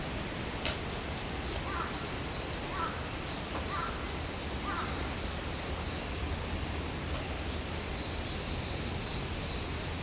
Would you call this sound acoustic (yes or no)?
yes